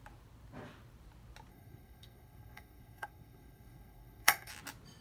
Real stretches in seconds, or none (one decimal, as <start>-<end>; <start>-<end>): 0.0-1.5; 4.5-5.0